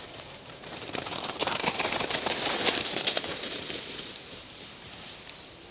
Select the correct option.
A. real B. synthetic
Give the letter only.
B